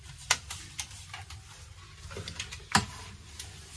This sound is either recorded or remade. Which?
recorded